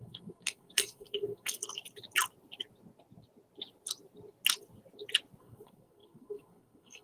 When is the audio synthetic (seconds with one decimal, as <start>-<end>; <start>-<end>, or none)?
0.0-1.6; 5.4-7.0